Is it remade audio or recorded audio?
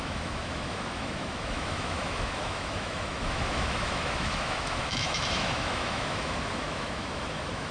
remade